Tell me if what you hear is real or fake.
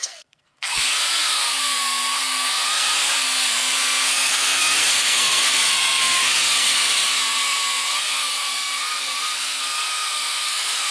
fake